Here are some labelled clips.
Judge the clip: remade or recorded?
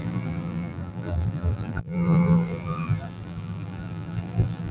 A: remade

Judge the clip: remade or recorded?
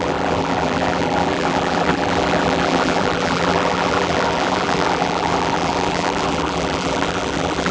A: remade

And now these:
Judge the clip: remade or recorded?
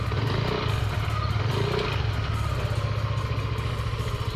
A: recorded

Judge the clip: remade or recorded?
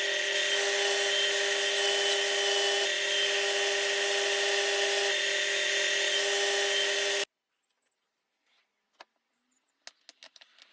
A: recorded